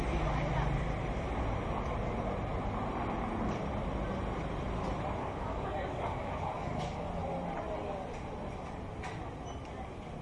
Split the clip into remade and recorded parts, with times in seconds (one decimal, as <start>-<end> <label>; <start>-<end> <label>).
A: 0.0-5.2 recorded; 5.2-7.0 remade; 7.0-10.2 recorded